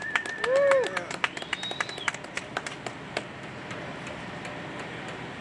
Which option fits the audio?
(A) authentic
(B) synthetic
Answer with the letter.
A